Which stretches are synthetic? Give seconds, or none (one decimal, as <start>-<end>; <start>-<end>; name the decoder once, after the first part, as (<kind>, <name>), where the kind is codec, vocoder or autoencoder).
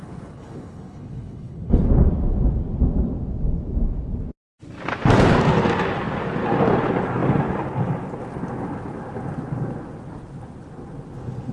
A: 0.0-1.9 (codec, HILCodec)